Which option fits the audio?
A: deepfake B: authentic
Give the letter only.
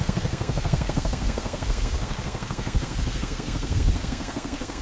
A